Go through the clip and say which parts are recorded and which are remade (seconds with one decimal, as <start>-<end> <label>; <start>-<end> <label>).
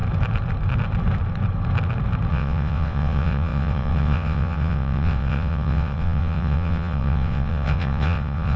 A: 0.0-2.3 recorded; 2.3-8.6 remade